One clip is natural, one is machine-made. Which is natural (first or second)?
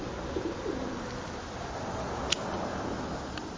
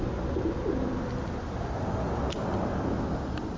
second